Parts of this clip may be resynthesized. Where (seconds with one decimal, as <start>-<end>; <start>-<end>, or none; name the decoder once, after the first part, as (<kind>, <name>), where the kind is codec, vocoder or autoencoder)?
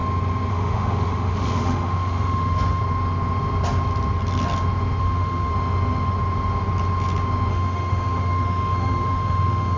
0.5-2.8 (autoencoder, DAC-VAE); 5.0-5.5; 7.5-9.8